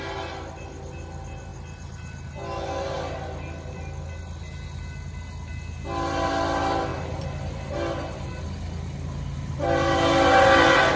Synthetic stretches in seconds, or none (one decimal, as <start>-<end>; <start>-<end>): none